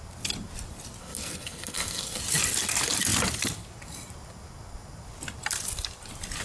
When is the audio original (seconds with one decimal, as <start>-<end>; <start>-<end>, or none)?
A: 0.0-1.0; 2.2-6.4